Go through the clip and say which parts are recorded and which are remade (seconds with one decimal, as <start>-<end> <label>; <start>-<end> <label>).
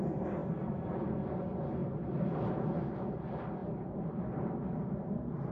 0.0-0.4 recorded; 0.4-1.0 remade; 1.0-1.8 recorded; 1.8-2.5 remade; 2.5-3.6 recorded; 3.6-4.2 remade; 4.2-5.5 recorded